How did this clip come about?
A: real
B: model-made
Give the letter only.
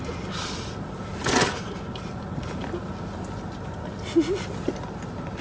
A